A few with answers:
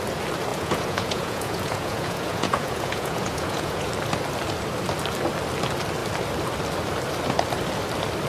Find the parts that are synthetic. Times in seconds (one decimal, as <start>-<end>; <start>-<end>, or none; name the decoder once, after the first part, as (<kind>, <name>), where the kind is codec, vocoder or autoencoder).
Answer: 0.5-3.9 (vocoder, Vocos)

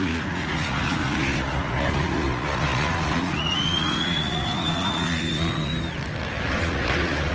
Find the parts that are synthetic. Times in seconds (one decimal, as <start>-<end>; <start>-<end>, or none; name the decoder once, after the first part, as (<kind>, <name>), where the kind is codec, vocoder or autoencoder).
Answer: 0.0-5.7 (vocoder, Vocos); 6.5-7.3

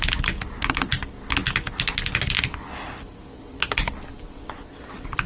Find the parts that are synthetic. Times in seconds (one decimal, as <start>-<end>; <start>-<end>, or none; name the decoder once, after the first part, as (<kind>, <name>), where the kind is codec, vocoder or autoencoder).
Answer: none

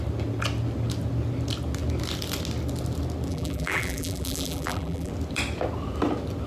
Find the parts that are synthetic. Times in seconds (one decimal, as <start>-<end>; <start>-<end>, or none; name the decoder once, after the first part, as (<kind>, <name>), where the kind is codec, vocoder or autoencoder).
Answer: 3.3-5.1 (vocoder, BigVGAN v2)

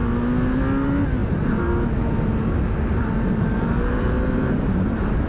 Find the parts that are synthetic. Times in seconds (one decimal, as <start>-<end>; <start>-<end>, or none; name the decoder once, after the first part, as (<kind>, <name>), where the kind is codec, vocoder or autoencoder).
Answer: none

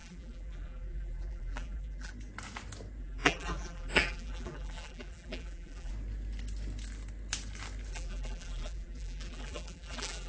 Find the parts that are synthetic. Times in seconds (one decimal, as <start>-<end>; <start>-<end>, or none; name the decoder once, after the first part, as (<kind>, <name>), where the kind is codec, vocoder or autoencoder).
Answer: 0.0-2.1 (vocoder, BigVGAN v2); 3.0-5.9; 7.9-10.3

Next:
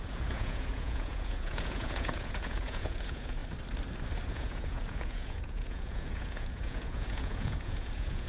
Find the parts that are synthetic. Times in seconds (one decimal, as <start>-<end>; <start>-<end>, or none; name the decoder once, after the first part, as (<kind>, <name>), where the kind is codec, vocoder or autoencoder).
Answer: 0.0-3.4 (vocoder, Vocos); 4.3-8.3

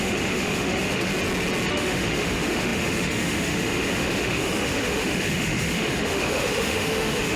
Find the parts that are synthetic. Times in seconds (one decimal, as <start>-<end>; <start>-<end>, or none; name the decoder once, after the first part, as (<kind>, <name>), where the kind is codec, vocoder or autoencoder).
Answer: 0.0-1.1 (autoencoder, DAC-VAE); 1.7-7.4